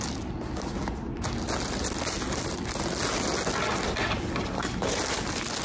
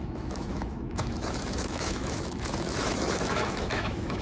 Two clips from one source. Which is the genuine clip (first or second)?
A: first